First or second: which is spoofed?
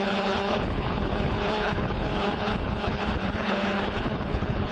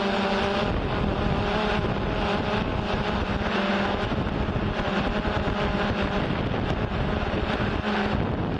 first